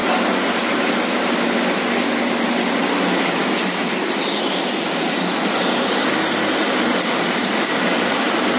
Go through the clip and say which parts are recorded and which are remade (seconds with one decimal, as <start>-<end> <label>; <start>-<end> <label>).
0.0-8.6 recorded